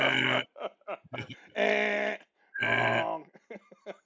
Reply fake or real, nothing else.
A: real